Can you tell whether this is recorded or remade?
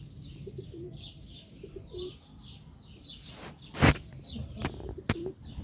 recorded